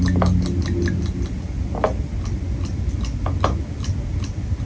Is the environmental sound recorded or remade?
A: recorded